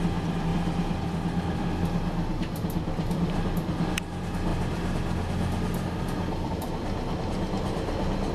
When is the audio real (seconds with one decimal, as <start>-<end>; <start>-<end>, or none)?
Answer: 0.0-8.3